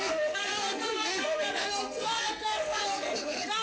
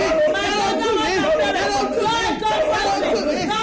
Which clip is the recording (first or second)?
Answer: second